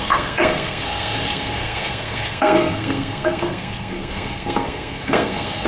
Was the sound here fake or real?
fake